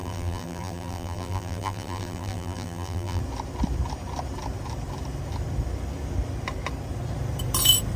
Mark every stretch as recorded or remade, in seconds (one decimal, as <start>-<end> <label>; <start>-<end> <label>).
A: 0.0-3.2 remade; 3.2-8.0 recorded